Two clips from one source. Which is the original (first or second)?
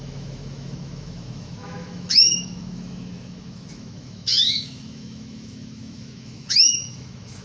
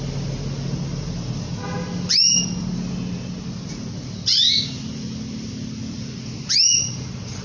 second